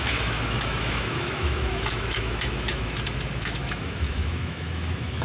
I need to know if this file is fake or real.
fake